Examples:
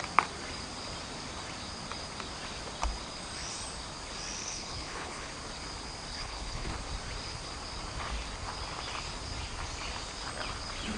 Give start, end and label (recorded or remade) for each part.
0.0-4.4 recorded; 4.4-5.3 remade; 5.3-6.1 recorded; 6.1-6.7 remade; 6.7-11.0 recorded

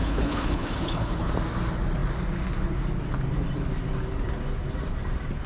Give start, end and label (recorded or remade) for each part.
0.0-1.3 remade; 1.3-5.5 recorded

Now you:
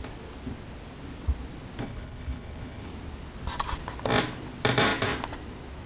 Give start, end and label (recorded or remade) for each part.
0.0-1.8 recorded; 1.8-2.9 remade; 2.9-5.9 recorded

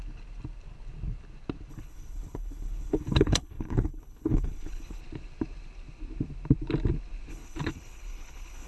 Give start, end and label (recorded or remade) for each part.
0.0-1.7 recorded; 1.7-5.0 remade; 5.0-7.3 recorded; 7.3-8.7 remade